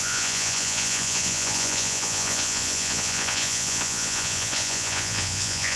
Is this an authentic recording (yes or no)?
no